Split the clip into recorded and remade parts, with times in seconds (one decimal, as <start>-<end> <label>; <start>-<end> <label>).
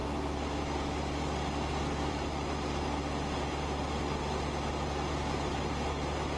0.0-6.4 recorded